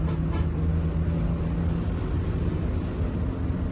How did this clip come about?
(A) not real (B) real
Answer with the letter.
B